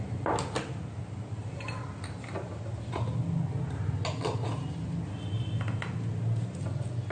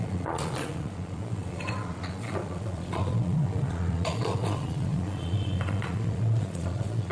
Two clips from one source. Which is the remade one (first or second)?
second